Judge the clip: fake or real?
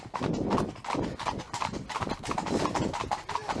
real